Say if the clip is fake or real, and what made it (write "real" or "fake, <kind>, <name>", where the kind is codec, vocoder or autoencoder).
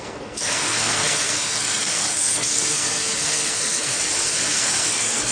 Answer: fake, codec, SNAC